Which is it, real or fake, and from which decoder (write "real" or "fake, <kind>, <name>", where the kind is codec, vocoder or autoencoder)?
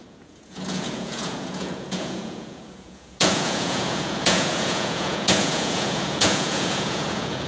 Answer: fake, vocoder, Vocos